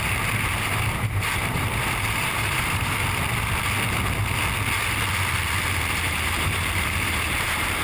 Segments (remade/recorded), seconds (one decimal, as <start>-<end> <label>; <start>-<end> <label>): 0.0-3.0 remade; 3.0-6.0 recorded; 6.0-7.8 remade